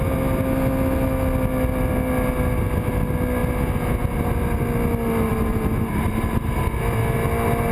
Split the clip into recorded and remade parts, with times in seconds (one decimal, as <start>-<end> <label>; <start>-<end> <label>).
0.0-5.3 recorded; 5.3-6.6 remade; 6.6-7.7 recorded